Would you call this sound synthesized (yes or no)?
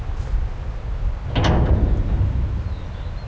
no